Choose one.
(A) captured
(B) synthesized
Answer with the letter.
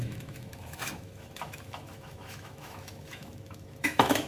B